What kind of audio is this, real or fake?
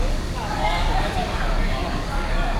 fake